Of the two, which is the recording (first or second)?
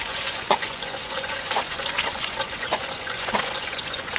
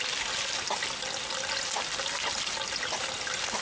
second